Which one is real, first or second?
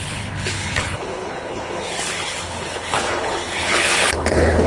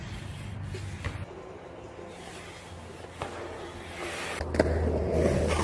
second